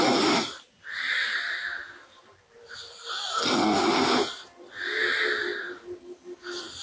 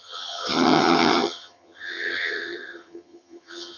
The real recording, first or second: first